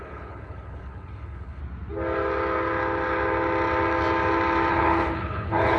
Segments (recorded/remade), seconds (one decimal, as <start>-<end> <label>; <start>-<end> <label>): 0.0-1.6 remade; 1.6-4.7 recorded; 4.7-5.8 remade